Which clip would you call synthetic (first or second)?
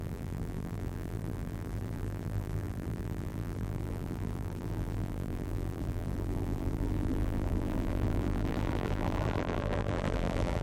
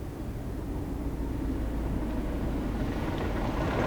first